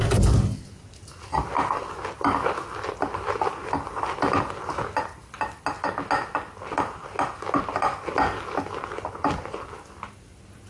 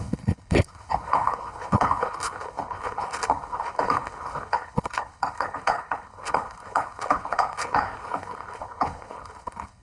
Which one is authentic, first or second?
first